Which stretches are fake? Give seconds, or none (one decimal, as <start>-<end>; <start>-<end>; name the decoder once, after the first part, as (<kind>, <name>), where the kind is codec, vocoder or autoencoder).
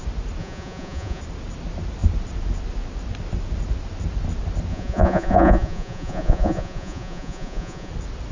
0.4-1.2 (vocoder, Vocos); 4.7-7.9